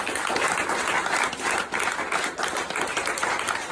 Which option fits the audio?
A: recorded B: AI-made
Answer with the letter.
A